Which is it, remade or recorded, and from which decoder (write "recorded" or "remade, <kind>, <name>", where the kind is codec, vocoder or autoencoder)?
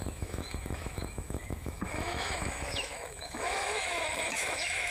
remade, autoencoder, DAC-VAE